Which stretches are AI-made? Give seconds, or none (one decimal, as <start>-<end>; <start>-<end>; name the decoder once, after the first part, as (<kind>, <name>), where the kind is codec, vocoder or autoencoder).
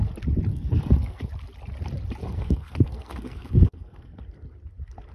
0.5-1.3 (codec, SNAC); 2.2-4.2